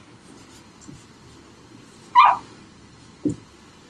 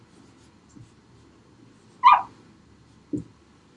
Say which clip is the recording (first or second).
second